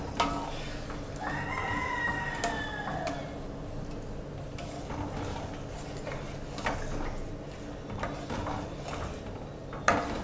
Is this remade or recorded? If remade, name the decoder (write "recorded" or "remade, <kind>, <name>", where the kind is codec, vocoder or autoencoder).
recorded